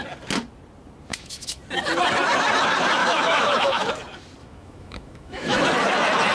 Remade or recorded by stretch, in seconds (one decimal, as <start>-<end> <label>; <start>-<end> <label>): 0.0-1.1 recorded; 1.1-1.6 remade; 1.6-3.0 recorded; 3.0-3.9 remade; 3.9-4.4 recorded; 4.4-5.6 remade; 5.6-6.3 recorded